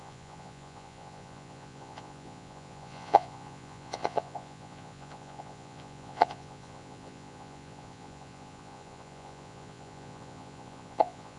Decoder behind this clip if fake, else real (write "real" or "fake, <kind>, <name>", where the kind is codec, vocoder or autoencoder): fake, vocoder, Vocos